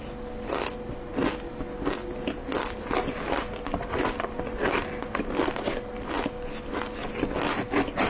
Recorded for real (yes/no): yes